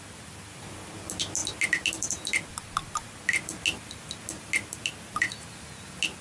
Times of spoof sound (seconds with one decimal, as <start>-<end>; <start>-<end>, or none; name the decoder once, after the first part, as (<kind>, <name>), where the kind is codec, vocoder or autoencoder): none